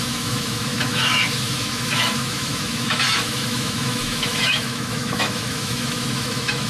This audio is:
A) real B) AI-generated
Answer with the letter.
B